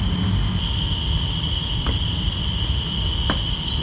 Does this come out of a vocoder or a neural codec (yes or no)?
no